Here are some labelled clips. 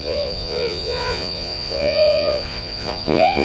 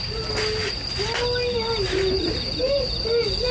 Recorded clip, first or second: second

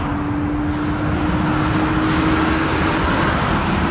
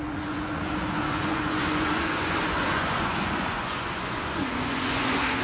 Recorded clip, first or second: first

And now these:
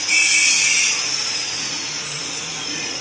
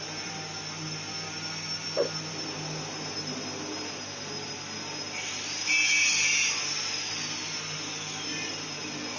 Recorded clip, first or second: second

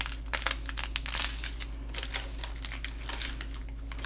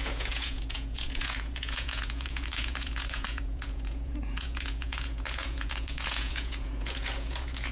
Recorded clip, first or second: first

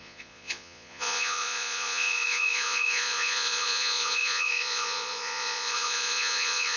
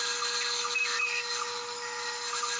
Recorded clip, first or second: second